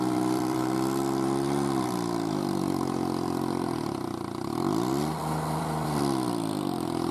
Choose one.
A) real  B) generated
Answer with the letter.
B